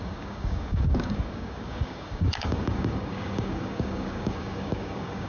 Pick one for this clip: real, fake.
fake